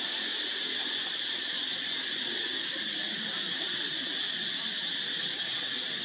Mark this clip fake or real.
real